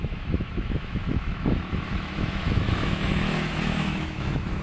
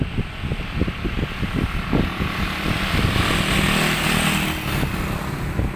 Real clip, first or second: second